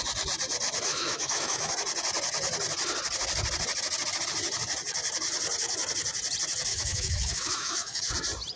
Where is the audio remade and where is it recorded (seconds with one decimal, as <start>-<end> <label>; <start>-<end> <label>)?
0.0-0.9 recorded; 0.9-1.7 remade; 1.7-6.7 recorded; 6.7-8.0 remade; 8.0-8.6 recorded